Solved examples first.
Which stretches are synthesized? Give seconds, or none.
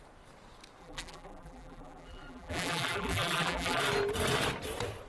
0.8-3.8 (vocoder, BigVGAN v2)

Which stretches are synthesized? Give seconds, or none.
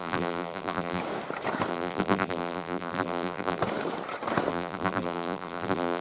0.0-1.0 (vocoder, BigVGAN v2); 1.7-3.6; 4.5-6.0